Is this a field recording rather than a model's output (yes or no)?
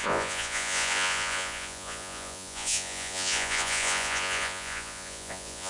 no